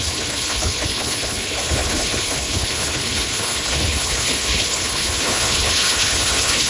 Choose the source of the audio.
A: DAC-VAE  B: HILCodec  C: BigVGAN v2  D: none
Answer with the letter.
B